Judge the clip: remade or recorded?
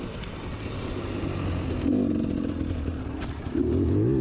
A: recorded